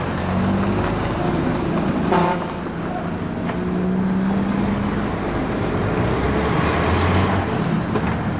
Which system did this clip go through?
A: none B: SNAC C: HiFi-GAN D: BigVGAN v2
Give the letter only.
A